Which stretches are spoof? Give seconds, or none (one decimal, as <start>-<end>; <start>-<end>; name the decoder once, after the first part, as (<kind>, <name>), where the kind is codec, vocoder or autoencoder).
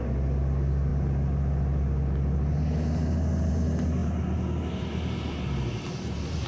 none